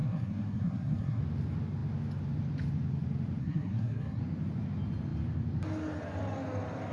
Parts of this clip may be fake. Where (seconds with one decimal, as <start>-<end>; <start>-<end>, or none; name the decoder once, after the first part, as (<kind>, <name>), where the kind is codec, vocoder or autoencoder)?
0.0-1.2 (codec, SNAC); 3.4-4.2